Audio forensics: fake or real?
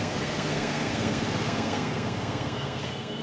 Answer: fake